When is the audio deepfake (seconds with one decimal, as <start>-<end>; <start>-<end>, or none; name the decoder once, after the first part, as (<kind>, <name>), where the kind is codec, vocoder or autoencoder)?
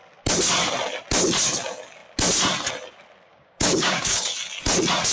3.3-4.3 (codec, DAC)